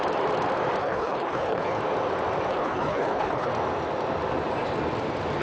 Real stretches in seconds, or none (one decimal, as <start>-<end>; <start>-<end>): 0.0-0.8; 1.8-2.5; 3.5-5.4